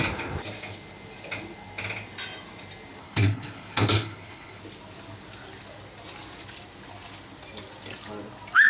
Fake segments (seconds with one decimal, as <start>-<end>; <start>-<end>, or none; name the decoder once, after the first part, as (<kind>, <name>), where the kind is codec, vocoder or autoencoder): 3.0-4.6 (codec, HILCodec)